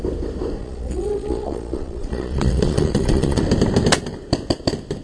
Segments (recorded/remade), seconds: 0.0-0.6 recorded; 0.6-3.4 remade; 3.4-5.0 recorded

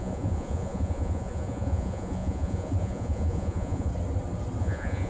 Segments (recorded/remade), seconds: 0.0-3.9 remade; 3.9-4.6 recorded; 4.6-5.1 remade

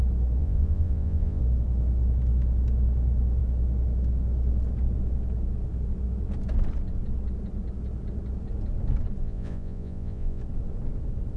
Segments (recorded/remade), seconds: 0.0-0.4 recorded; 0.4-1.4 remade; 1.4-9.2 recorded; 9.2-10.4 remade; 10.4-11.4 recorded

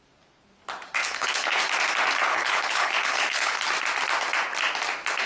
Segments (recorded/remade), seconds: 0.0-1.0 recorded; 1.0-1.6 remade; 1.6-2.3 recorded; 2.3-3.6 remade; 3.6-5.3 recorded

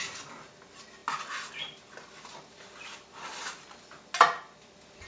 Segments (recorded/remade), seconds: 0.0-5.1 recorded

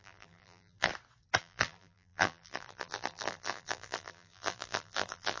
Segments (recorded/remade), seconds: 0.0-0.9 remade; 0.9-1.4 recorded; 1.4-5.4 remade